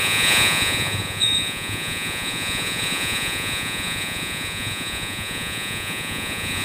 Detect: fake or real fake